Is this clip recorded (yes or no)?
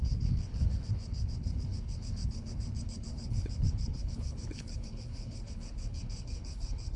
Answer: no